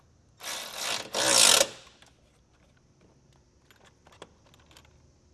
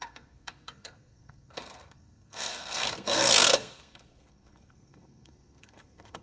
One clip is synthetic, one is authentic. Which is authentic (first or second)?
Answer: first